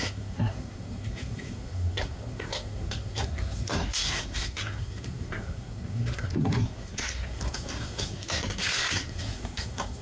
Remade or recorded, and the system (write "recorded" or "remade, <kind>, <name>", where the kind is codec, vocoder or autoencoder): remade, codec, SNAC